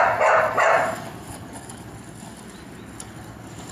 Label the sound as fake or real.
real